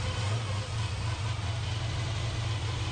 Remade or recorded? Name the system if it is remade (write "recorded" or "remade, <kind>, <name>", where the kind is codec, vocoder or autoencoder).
recorded